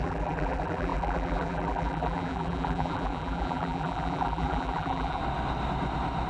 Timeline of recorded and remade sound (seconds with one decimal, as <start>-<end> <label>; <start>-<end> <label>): 0.0-5.2 remade; 5.2-6.3 recorded